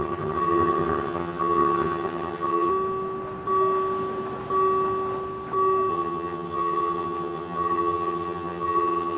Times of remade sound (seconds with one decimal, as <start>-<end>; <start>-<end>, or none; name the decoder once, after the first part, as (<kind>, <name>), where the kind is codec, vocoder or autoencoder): 0.0-2.7 (vocoder, HiFi-GAN); 5.9-9.2